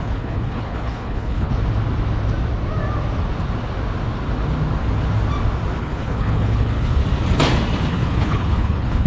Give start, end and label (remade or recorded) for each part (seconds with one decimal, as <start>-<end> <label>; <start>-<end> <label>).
0.0-1.5 remade; 1.5-5.8 recorded; 5.8-7.0 remade; 7.0-7.9 recorded; 7.9-9.1 remade